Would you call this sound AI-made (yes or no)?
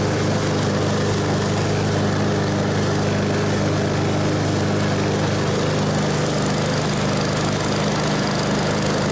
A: no